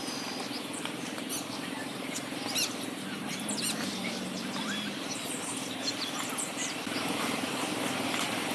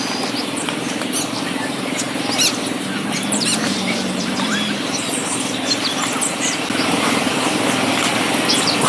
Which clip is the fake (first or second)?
first